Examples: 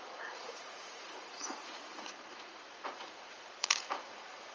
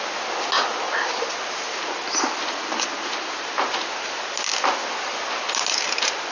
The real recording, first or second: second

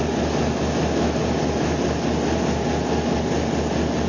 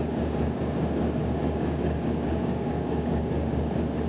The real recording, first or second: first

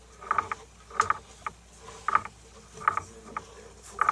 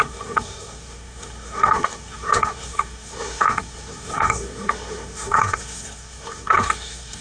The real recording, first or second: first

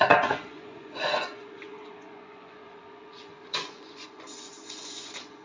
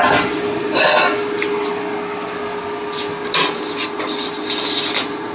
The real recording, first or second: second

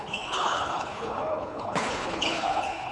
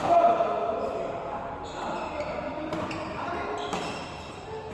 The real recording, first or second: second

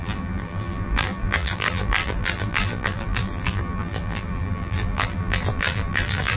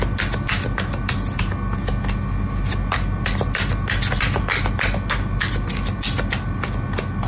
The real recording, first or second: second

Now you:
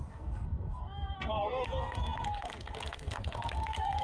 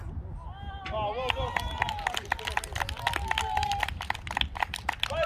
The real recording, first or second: second